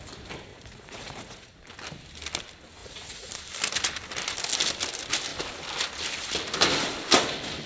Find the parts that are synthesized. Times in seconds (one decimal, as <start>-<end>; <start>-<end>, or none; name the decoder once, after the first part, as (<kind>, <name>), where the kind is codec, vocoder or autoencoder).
0.5-1.6 (vocoder, Vocos); 2.8-3.3

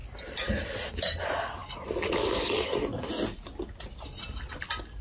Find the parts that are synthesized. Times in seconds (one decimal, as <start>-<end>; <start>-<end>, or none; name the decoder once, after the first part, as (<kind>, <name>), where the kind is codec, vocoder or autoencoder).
none

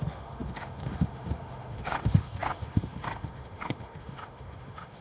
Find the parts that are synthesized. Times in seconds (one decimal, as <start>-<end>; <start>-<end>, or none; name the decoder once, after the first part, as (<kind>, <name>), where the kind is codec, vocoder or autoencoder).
0.0-5.0 (autoencoder, DAC-VAE)

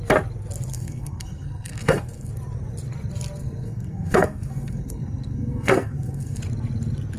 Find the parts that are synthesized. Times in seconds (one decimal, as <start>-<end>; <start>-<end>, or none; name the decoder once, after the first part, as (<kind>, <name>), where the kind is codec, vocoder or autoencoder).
0.7-2.3 (codec, SNAC); 3.4-6.4

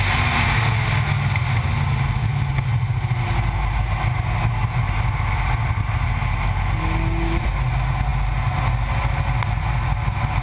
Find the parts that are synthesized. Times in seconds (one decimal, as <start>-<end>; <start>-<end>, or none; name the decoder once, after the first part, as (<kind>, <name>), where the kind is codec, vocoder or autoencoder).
none

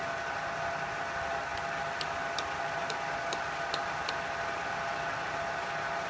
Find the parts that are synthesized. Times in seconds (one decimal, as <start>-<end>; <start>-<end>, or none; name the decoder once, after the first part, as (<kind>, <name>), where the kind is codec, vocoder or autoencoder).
none

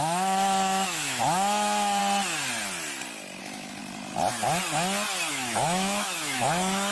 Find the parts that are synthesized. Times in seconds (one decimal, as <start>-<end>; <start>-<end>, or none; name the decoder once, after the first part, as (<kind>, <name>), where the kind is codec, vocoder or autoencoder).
0.0-2.0 (autoencoder, DAC-VAE); 3.4-3.8; 5.3-6.9